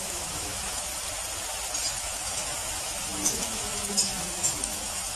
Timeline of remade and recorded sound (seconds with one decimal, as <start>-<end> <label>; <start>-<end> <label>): 0.0-0.9 remade; 0.9-2.0 recorded; 2.0-5.2 remade